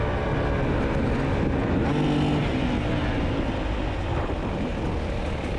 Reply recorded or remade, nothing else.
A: recorded